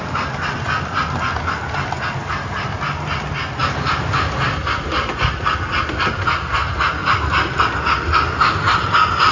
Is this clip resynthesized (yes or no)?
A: no